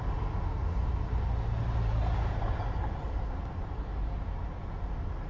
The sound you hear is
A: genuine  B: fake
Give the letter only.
A